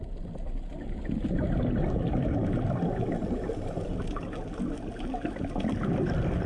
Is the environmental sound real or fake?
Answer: fake